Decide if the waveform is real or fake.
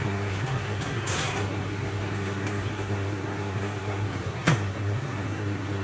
fake